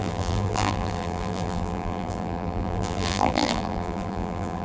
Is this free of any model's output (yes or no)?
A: no